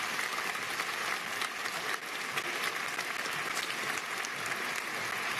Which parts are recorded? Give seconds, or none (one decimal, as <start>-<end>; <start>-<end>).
0.0-5.4